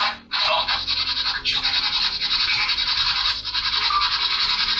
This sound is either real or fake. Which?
real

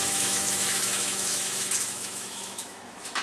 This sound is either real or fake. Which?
fake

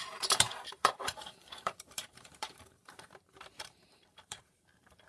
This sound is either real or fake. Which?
fake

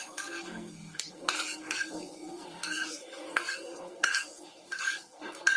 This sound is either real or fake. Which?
fake